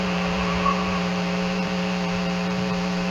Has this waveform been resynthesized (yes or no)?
yes